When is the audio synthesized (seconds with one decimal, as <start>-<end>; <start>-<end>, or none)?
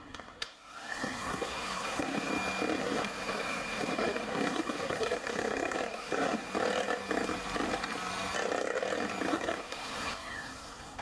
0.0-2.3; 2.8-6.5; 9.3-11.0